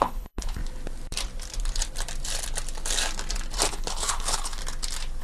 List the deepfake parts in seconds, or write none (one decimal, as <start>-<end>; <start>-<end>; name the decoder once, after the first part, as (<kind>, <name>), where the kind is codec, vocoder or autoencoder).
0.0-0.6 (codec, HILCodec); 3.7-4.6